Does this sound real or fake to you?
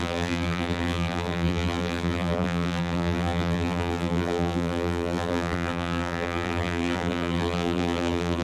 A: fake